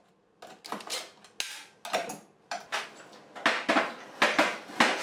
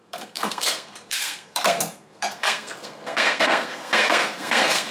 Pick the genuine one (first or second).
first